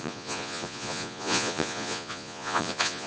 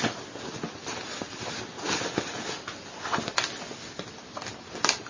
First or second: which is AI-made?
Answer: first